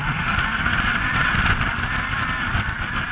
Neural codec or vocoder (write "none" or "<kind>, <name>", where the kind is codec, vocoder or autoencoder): none